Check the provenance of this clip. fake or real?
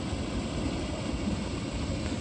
real